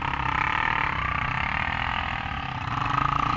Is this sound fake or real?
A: real